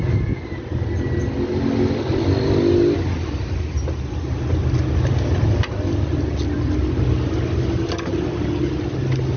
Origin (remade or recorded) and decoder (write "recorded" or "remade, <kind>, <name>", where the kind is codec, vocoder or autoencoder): recorded